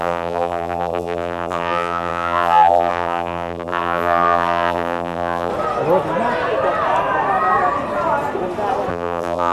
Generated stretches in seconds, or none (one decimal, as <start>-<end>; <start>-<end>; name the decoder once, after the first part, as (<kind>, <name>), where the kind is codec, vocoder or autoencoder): 0.0-5.5 (vocoder, BigVGAN v2); 8.9-9.5